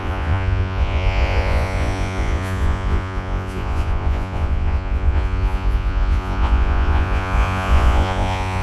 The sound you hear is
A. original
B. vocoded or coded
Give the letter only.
B